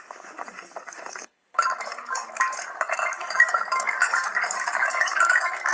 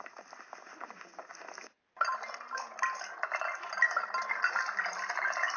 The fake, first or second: first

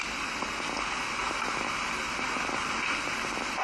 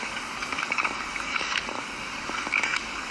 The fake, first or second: second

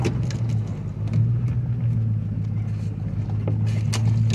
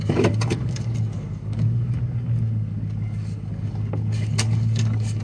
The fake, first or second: second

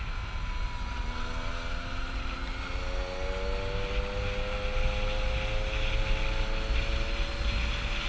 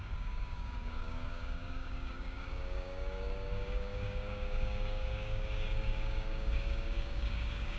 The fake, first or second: second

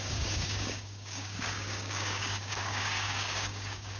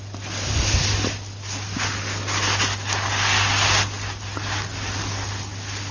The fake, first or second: first